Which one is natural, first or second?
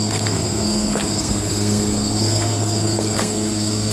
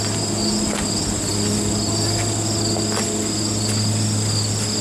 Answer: second